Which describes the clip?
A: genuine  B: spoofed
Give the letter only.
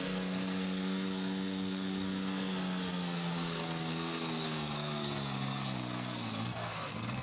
B